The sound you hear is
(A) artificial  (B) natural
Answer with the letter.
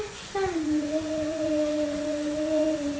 A